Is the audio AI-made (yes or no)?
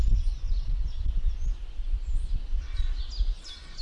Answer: no